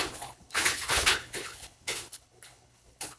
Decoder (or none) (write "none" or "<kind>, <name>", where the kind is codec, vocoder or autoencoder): codec, HILCodec